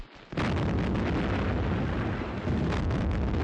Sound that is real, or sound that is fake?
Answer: real